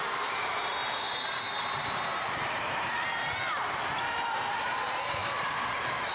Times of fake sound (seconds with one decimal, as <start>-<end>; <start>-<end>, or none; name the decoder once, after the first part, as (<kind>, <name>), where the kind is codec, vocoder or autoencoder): 0.0-0.8 (vocoder, BigVGAN v2); 4.5-5.2